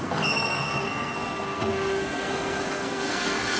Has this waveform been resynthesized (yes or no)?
yes